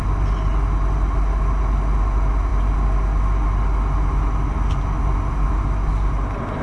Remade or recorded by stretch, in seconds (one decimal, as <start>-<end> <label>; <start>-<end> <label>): 0.0-6.6 recorded